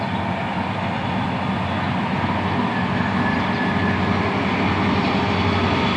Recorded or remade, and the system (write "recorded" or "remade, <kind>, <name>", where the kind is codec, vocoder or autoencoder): recorded